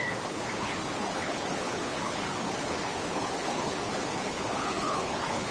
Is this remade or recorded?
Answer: remade